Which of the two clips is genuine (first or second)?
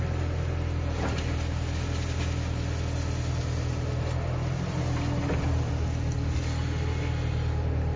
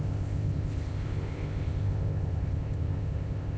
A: first